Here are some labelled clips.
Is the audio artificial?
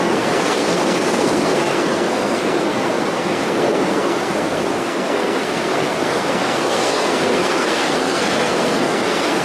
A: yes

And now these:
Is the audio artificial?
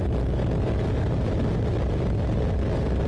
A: no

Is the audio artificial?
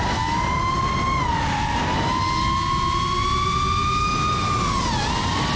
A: no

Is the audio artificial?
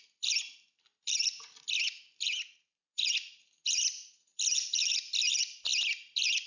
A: no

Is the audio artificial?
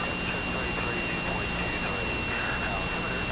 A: no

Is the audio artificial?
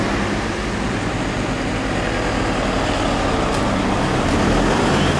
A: no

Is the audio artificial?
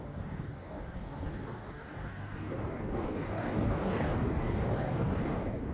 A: yes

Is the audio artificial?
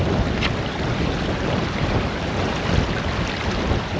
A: no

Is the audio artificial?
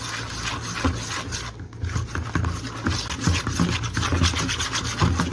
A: no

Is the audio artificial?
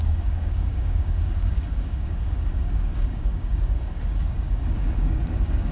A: yes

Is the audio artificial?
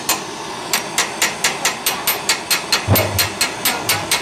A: no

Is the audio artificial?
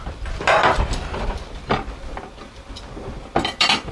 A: no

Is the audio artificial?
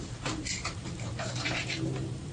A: yes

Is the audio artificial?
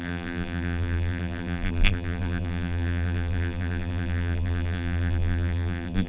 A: yes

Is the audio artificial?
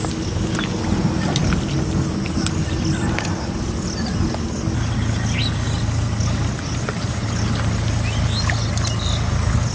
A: no